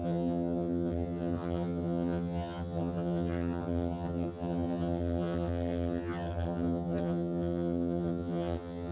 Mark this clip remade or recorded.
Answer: remade